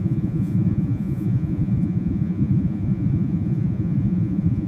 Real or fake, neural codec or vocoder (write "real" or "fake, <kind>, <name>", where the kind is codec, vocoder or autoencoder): fake, vocoder, Vocos